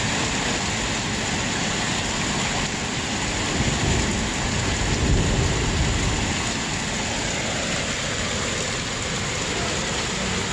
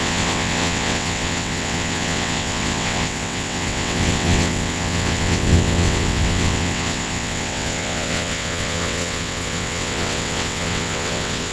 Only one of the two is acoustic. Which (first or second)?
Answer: first